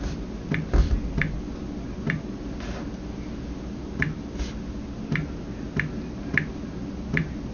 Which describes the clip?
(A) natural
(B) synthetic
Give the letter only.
A